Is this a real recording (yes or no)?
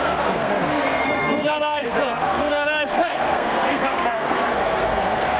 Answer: no